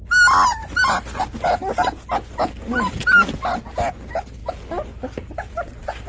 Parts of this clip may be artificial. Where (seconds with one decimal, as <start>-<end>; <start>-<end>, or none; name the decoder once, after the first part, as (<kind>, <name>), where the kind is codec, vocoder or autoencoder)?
0.6-1.2 (vocoder, BigVGAN v2)